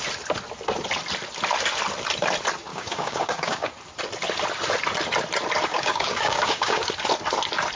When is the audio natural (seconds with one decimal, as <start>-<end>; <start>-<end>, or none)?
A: 0.0-2.7; 3.7-5.7; 6.9-7.8